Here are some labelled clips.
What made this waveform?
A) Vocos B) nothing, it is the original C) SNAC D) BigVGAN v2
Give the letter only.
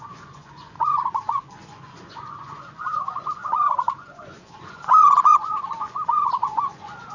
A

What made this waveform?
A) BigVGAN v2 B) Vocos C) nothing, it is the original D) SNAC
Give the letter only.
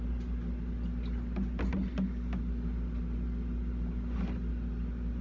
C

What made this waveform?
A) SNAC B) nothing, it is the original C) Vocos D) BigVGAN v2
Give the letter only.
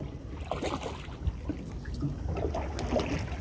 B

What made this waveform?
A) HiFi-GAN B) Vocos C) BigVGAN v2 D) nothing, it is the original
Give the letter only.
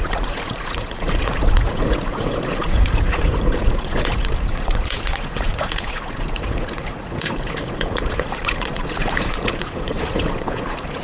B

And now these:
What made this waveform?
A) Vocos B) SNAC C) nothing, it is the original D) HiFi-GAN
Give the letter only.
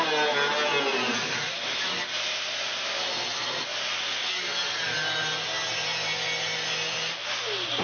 C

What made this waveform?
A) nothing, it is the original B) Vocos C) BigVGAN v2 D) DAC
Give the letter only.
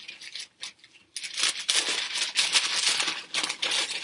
A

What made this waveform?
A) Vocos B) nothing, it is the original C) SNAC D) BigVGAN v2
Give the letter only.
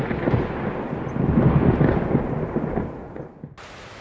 B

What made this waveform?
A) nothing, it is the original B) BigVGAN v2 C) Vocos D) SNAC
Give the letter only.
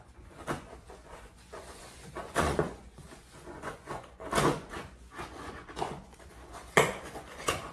C